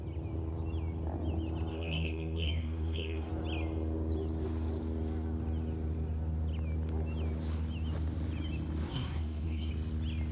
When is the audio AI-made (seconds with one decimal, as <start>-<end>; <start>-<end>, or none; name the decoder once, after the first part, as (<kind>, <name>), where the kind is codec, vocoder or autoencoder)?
1.7-3.3 (codec, SNAC); 8.9-9.7